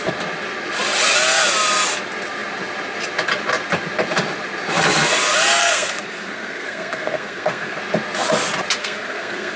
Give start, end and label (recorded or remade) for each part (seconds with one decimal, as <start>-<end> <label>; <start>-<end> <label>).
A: 0.0-5.6 recorded; 5.6-7.8 remade; 7.8-8.8 recorded; 8.8-9.6 remade

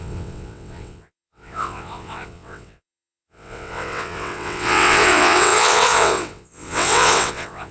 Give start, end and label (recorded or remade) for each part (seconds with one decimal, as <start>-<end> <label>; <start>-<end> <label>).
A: 0.0-7.7 remade

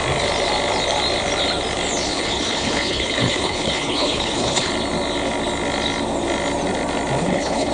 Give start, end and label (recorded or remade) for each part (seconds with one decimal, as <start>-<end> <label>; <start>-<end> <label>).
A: 0.0-2.1 recorded; 2.1-4.7 remade; 4.7-7.2 recorded; 7.2-7.7 remade

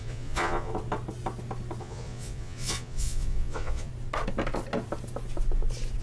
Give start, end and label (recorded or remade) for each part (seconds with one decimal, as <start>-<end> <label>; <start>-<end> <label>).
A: 0.0-0.7 remade; 0.7-1.8 recorded; 1.8-3.9 remade; 3.9-6.0 recorded